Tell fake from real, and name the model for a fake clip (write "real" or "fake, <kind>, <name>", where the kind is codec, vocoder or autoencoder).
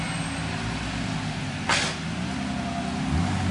real